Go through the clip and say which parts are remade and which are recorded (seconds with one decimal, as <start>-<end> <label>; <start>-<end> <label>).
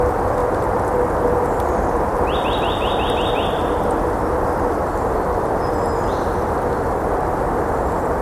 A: 0.0-8.2 recorded